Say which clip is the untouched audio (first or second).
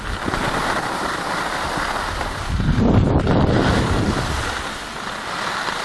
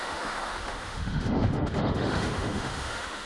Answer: first